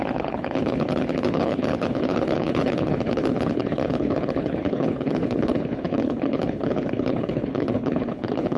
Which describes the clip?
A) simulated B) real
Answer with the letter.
A